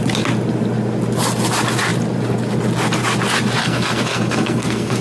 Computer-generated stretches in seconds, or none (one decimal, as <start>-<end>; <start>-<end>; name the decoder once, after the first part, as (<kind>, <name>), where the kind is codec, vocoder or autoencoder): 3.6-5.0 (codec, SNAC)